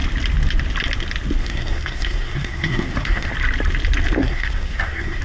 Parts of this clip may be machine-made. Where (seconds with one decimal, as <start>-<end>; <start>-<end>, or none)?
1.4-3.3; 4.2-5.2